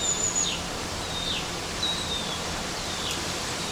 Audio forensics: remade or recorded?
remade